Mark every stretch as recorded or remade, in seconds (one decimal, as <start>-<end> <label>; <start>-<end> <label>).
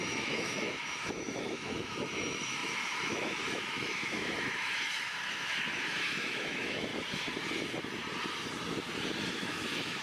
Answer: 0.0-6.9 remade; 6.9-9.3 recorded; 9.3-10.0 remade